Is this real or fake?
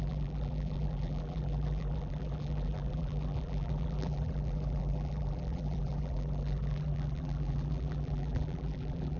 fake